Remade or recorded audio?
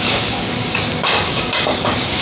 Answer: remade